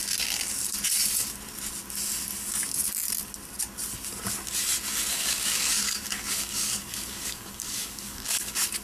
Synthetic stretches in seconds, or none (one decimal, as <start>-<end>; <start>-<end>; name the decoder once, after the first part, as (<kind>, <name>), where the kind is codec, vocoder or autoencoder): 5.1-8.8 (codec, DAC)